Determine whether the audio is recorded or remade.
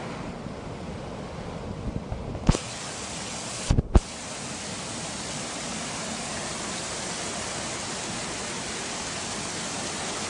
recorded